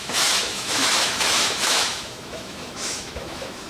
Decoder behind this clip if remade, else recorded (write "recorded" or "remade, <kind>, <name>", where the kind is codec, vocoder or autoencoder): remade, autoencoder, DAC-VAE